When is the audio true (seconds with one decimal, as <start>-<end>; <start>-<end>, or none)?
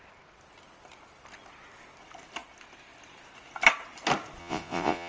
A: 0.0-4.4